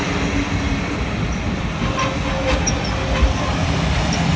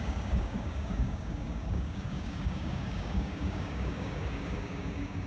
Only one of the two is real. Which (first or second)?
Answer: first